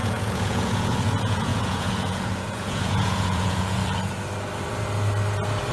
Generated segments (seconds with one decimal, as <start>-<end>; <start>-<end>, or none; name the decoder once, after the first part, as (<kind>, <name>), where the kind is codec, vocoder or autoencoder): 0.0-3.8 (vocoder, Vocos)

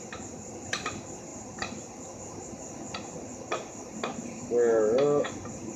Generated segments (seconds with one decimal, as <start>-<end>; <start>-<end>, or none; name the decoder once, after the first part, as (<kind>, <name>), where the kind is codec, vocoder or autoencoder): none

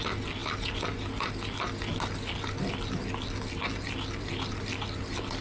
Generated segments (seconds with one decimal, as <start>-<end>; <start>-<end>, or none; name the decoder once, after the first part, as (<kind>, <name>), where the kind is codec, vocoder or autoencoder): none

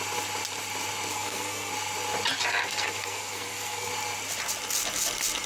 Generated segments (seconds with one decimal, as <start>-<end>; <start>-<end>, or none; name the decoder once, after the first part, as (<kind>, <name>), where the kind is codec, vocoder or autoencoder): 1.1-1.7 (codec, SNAC); 2.6-3.9

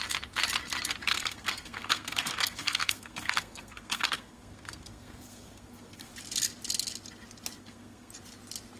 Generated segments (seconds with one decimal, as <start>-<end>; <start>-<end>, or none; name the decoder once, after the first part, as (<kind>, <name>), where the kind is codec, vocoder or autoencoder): 1.0-6.1 (codec, SNAC); 7.6-8.1